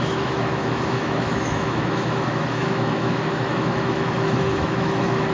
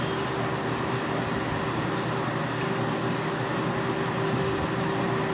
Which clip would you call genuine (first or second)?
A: second